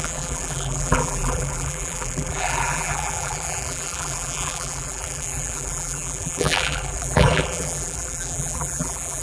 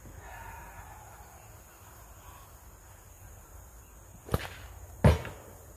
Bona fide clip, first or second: second